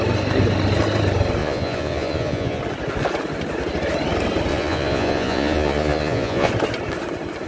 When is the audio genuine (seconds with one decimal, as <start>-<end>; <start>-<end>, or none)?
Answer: 0.0-1.4; 2.6-4.5; 6.5-7.5